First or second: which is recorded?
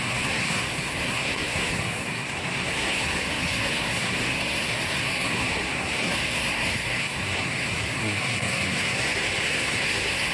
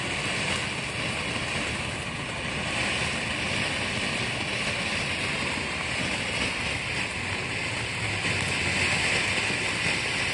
second